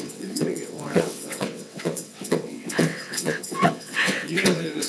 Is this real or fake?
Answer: fake